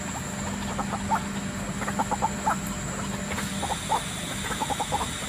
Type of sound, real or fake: real